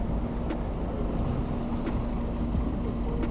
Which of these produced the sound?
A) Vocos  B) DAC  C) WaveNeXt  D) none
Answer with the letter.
D